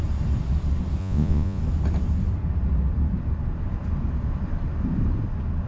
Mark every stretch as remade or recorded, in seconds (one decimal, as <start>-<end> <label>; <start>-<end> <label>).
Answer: 0.0-1.0 recorded; 1.0-1.6 remade; 1.6-5.7 recorded